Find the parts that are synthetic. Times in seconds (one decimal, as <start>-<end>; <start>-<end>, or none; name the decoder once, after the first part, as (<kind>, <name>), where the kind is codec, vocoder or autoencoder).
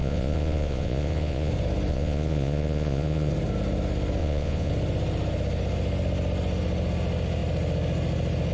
0.0-1.5 (vocoder, Vocos); 1.9-3.3; 4.2-4.7